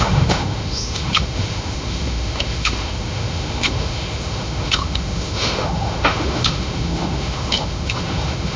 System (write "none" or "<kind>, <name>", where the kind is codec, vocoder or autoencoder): autoencoder, DAC-VAE